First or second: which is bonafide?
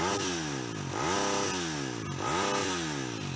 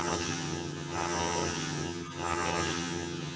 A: first